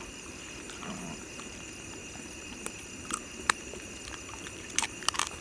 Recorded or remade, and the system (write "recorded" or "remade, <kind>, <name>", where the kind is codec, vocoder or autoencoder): remade, vocoder, BigVGAN v2